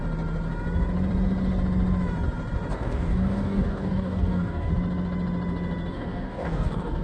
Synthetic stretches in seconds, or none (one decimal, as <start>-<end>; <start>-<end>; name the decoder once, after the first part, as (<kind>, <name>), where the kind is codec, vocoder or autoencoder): 2.7-4.7 (codec, DAC); 5.9-7.0